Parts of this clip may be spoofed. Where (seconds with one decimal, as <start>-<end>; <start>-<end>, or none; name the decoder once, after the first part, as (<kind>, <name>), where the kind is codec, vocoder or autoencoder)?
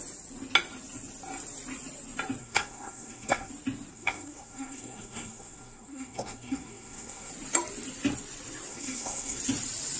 2.4-3.5 (codec, SNAC); 3.9-7.3; 8.7-9.4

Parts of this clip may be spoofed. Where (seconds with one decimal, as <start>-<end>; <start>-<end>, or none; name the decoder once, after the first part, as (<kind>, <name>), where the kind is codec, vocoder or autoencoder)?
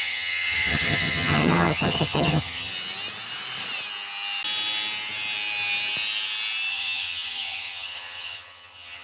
0.0-2.7 (vocoder, HiFi-GAN); 6.7-9.0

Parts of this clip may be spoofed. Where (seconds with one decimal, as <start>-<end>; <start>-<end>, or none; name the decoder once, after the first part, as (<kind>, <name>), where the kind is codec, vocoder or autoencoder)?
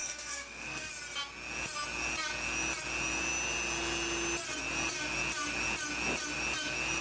0.0-0.9 (codec, SNAC)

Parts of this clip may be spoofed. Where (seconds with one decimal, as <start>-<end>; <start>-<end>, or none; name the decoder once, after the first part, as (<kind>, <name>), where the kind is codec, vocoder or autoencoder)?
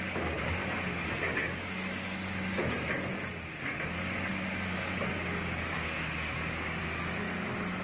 0.0-0.6 (codec, DAC); 1.2-2.6; 4.3-6.8